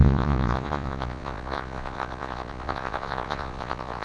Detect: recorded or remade remade